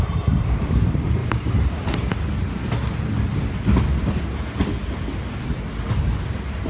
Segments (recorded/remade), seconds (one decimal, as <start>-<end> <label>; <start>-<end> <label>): 0.0-1.2 remade; 1.2-5.2 recorded; 5.2-6.7 remade